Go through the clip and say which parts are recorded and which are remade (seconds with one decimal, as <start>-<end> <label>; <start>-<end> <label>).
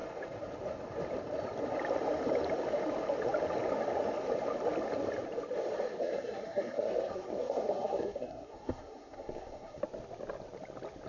0.0-6.0 recorded; 6.0-9.8 remade; 9.8-11.1 recorded